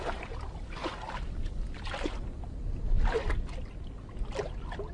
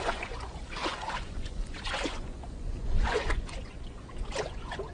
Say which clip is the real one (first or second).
first